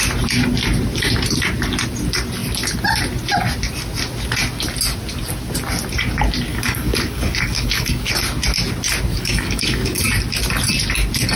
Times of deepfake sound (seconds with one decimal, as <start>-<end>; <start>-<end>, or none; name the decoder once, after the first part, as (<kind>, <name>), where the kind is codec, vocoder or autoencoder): 6.5-8.1 (codec, DAC); 9.1-10.0